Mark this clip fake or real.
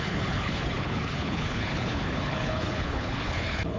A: fake